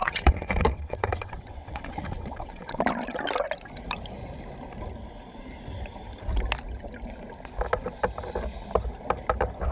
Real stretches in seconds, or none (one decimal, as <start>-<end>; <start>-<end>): 2.8-9.7

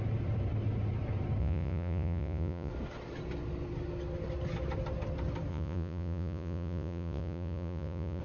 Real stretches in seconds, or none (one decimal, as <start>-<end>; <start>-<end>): 0.0-1.4; 2.7-5.5

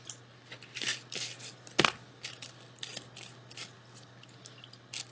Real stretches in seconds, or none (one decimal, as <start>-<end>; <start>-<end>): 0.0-5.1

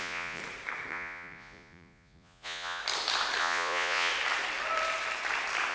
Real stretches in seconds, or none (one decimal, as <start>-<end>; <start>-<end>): 0.4-0.9; 2.8-3.4; 4.1-5.7

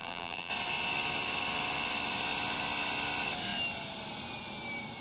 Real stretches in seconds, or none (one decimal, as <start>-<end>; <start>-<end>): 0.5-5.0

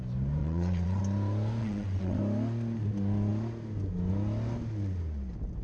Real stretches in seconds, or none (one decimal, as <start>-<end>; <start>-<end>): 0.0-0.4; 1.0-1.6; 2.2-5.6